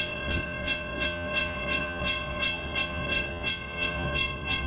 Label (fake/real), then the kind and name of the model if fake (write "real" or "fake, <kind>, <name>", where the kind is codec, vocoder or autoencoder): fake, vocoder, WaveNeXt